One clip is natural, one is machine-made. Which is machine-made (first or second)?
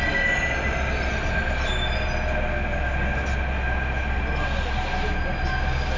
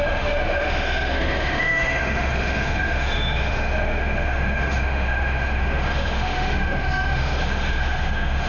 second